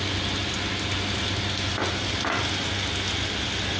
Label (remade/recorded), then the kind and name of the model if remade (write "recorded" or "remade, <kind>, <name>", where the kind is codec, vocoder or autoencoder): recorded